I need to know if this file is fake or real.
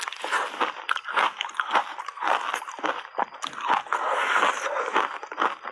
real